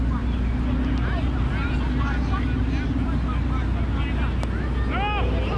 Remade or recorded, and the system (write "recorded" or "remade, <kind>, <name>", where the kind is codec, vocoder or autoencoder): recorded